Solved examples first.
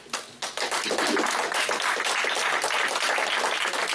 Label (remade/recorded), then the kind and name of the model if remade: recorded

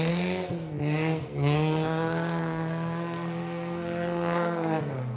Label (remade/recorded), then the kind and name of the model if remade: remade, codec, SNAC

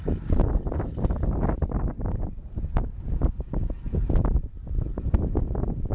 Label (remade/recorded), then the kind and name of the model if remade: recorded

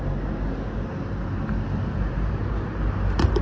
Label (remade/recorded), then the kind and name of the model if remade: recorded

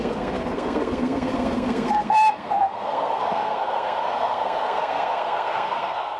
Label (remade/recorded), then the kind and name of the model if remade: remade, codec, SNAC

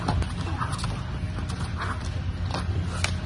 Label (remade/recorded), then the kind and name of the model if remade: recorded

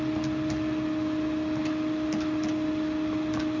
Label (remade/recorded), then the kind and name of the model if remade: recorded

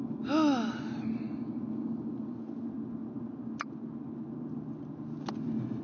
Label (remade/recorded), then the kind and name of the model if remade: recorded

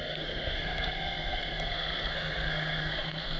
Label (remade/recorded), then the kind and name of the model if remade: remade, codec, SNAC